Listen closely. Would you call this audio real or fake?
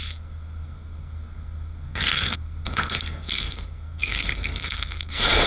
fake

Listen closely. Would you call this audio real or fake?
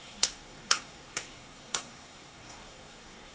fake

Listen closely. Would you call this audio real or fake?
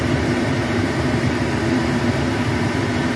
fake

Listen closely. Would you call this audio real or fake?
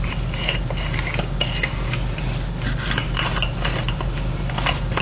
real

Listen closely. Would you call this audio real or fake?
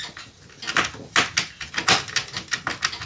real